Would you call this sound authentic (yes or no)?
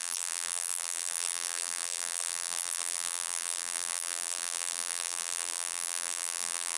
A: no